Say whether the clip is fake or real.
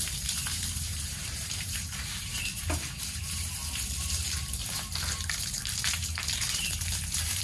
fake